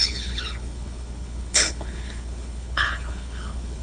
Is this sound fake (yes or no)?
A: yes